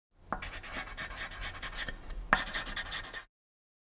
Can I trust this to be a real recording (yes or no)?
yes